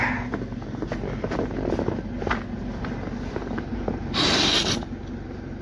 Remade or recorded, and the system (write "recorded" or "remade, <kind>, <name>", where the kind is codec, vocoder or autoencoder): recorded